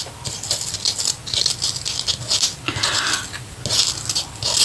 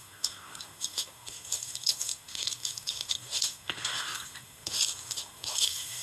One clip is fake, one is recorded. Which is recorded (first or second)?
first